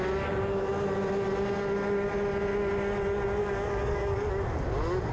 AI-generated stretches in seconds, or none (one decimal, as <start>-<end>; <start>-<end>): 3.4-4.3

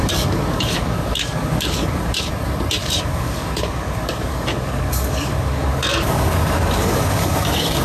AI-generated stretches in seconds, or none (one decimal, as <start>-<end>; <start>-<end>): 0.0-2.3; 2.8-7.8